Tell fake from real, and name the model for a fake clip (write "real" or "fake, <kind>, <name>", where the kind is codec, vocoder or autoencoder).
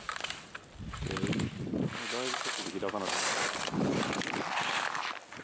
real